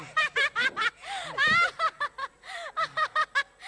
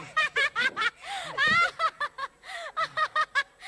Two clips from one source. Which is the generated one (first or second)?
second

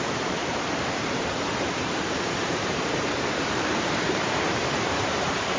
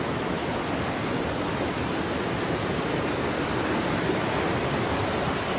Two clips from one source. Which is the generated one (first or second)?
first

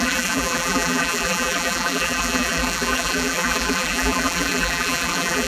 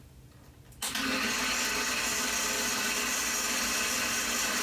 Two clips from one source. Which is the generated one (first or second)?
first